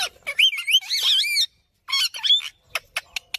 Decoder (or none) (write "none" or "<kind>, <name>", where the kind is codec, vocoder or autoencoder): none